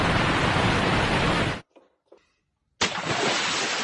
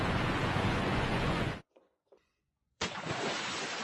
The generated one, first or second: second